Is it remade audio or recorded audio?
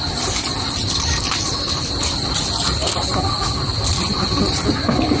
recorded